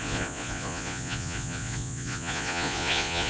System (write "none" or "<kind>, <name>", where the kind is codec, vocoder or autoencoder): vocoder, Vocos